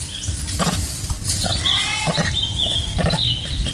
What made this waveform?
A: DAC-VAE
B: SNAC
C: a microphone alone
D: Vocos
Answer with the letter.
C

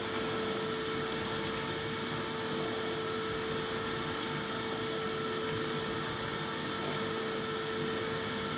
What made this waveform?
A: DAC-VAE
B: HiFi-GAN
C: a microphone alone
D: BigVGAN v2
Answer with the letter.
C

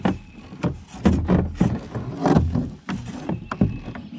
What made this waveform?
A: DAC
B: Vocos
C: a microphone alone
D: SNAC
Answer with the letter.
C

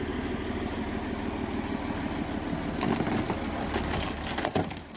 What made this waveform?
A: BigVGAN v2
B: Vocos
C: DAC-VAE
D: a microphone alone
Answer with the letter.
D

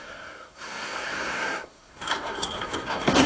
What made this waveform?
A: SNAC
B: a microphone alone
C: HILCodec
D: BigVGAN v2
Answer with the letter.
A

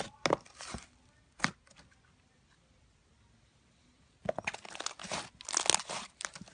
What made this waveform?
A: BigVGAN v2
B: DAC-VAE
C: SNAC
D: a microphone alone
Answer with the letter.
D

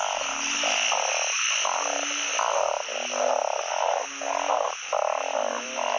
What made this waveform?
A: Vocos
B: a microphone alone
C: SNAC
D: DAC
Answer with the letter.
B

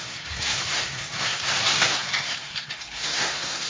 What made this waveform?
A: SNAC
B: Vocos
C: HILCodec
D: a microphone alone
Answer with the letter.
A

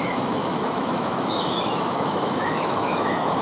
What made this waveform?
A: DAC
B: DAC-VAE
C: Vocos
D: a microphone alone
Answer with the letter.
B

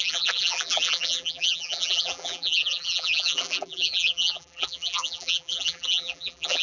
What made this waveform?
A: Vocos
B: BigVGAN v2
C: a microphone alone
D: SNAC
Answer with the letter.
B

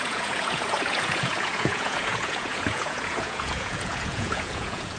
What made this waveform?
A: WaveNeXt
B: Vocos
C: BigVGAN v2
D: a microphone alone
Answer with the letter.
B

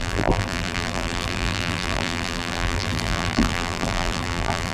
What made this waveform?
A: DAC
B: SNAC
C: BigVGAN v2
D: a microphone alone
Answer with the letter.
C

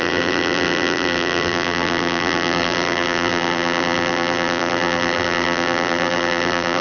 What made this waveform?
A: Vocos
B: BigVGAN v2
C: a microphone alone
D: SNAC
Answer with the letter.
B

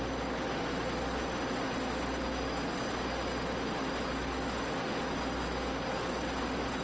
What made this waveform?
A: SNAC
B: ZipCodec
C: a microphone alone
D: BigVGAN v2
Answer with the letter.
C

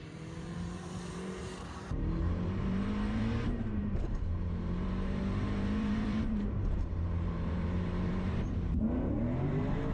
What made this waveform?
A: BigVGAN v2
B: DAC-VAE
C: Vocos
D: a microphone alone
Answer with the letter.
A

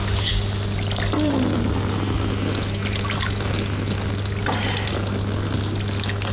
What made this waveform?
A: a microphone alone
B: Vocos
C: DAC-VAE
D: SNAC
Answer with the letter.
A